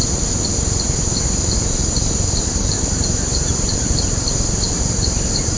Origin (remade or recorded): remade